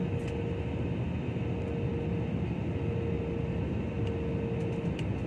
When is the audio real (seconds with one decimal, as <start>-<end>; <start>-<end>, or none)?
0.0-5.3

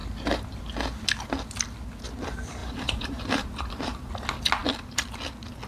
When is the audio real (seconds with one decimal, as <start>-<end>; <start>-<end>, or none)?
0.6-2.6; 4.1-5.7

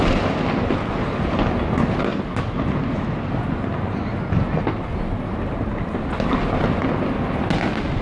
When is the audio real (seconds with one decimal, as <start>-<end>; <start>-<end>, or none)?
0.0-8.0

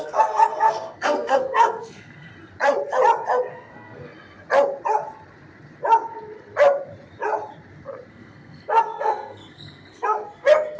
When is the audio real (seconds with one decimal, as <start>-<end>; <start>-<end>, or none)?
2.3-3.5; 4.1-8.1

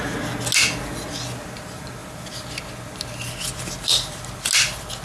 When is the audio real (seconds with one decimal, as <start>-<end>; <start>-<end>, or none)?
0.0-5.0